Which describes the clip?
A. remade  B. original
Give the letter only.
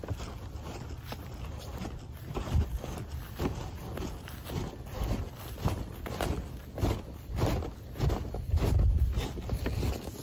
B